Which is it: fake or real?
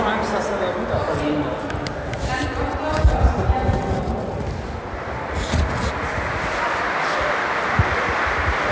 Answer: real